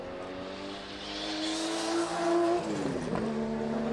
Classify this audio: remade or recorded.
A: recorded